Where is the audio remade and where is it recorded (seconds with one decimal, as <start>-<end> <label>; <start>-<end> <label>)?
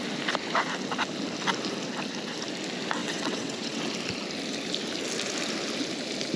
0.0-3.0 recorded; 3.0-3.8 remade; 3.8-6.4 recorded